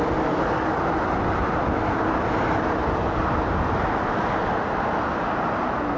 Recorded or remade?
recorded